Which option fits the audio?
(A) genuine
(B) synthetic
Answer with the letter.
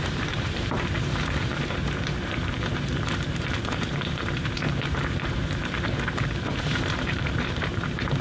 B